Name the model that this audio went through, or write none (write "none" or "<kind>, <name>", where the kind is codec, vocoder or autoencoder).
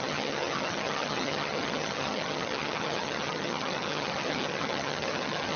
vocoder, HiFi-GAN